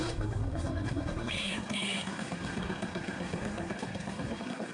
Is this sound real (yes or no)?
no